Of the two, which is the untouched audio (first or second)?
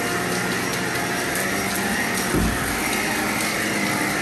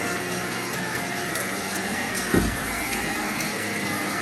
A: first